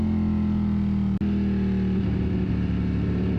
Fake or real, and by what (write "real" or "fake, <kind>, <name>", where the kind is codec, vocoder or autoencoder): real